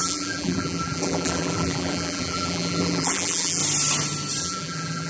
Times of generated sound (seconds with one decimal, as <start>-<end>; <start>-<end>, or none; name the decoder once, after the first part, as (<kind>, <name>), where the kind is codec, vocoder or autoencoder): 0.0-3.6 (vocoder, BigVGAN v2); 4.4-5.1